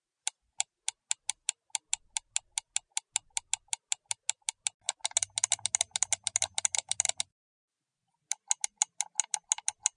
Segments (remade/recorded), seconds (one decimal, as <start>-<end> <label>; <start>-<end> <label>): 0.0-10.0 recorded